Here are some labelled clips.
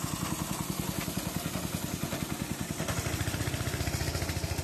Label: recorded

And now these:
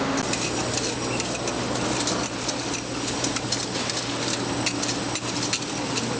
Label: recorded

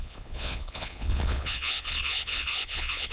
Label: remade